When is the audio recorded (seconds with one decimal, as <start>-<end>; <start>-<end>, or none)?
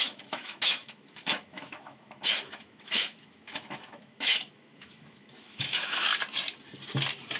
6.1-7.4